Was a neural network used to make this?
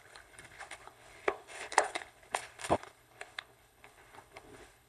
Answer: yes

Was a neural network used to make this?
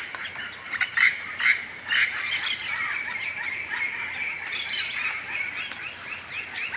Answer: no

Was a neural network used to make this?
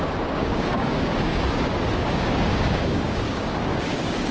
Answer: yes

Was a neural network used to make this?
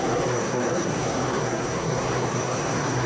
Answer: yes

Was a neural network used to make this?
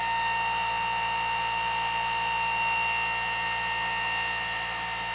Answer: no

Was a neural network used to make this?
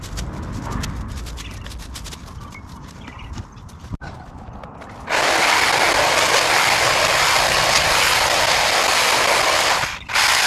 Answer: no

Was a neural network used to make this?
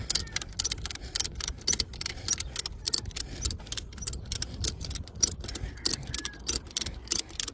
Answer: no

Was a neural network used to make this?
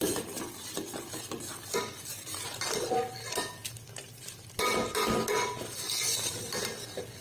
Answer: no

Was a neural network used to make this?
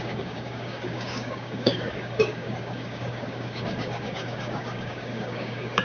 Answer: yes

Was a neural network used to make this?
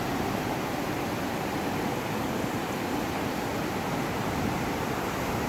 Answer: no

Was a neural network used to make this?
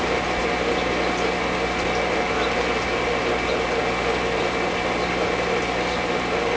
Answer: no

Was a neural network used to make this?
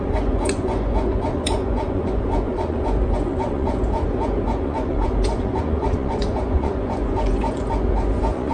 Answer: yes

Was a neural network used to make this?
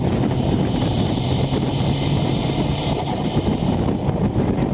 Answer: yes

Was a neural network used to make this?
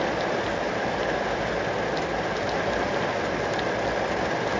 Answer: no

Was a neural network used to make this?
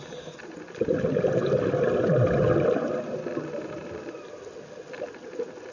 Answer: no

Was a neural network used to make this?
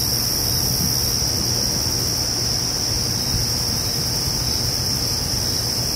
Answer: no